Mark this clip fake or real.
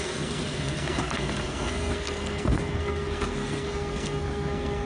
fake